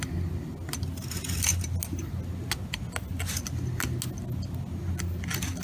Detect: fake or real real